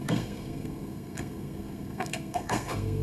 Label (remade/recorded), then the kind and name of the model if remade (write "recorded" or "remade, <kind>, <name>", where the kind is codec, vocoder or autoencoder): remade, codec, SNAC